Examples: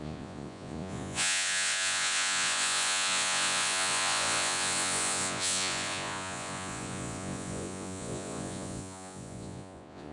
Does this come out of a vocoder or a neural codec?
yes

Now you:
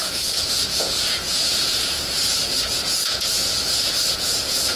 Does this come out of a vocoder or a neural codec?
yes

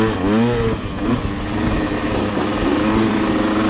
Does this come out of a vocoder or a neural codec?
no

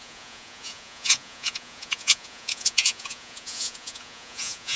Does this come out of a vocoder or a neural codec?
yes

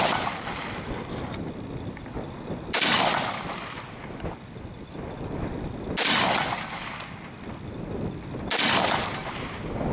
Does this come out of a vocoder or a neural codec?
no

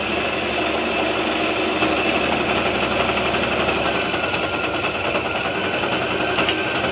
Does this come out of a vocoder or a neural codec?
no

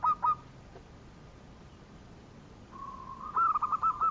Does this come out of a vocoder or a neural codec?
no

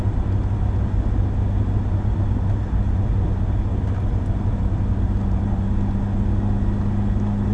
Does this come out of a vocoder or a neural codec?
no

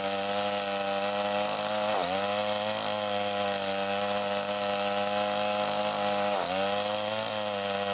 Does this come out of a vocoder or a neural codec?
no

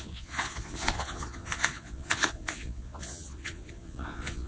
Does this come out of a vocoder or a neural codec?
yes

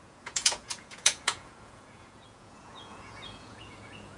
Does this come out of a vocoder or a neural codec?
yes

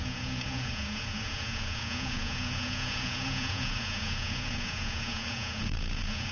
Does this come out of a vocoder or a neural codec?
yes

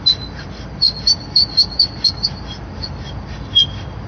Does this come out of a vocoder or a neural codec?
no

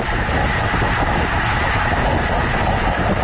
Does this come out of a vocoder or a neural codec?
no